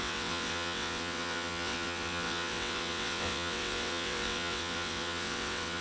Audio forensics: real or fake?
fake